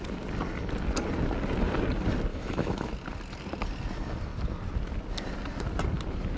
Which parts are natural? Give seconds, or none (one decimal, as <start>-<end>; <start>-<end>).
0.0-2.3; 2.9-6.4